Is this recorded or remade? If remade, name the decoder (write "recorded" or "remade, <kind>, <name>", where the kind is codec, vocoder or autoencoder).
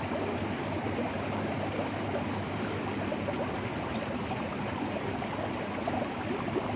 recorded